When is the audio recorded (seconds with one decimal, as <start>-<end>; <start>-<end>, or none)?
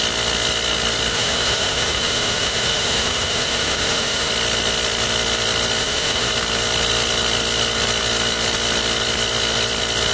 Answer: 0.0-1.1; 4.3-5.8; 6.3-10.1